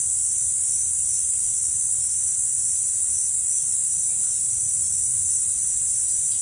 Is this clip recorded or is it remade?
recorded